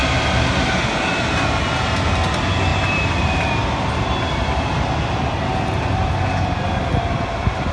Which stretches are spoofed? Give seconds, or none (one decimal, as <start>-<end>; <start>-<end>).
0.0-0.7; 2.7-3.9

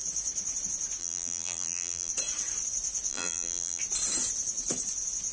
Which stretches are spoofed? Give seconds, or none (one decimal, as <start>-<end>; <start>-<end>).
1.0-2.1; 3.1-3.8

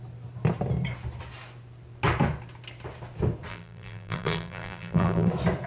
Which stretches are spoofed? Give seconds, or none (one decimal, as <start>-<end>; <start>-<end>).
3.5-5.3